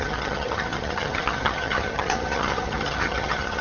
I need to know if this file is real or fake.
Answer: fake